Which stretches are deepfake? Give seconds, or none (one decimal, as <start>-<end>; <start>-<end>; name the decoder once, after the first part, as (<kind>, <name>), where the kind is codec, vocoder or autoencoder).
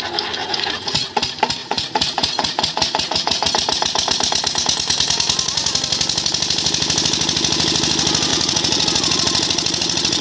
0.4-1.2 (vocoder, Vocos); 1.6-3.5; 8.3-10.2